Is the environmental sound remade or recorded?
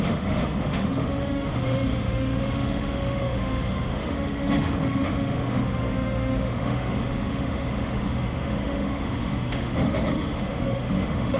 remade